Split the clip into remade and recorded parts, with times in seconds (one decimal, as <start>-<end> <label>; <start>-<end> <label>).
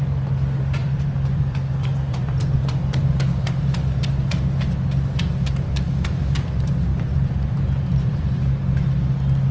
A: 0.0-0.8 recorded; 0.8-4.0 remade; 4.0-6.9 recorded; 6.9-8.4 remade; 8.4-9.5 recorded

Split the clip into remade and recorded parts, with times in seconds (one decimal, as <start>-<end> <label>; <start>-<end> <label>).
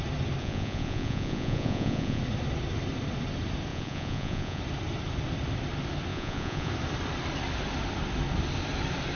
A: 0.0-0.4 recorded; 0.4-2.2 remade; 2.2-3.7 recorded; 3.7-4.6 remade; 4.6-6.1 recorded; 6.1-6.7 remade; 6.7-9.2 recorded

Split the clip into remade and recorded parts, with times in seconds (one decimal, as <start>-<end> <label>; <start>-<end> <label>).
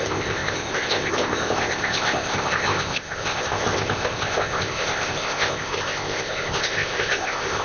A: 0.0-7.6 remade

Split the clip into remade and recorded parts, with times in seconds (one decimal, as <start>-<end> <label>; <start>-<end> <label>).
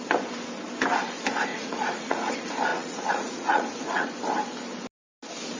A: 0.0-1.5 recorded; 1.5-2.3 remade; 2.3-2.7 recorded; 2.7-4.1 remade; 4.1-5.6 recorded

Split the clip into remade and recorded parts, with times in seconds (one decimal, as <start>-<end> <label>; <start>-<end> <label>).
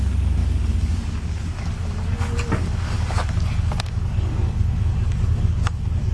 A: 0.0-6.1 remade